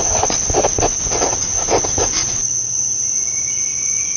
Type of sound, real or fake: real